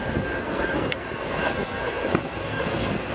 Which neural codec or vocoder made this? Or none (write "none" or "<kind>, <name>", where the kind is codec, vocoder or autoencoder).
codec, SNAC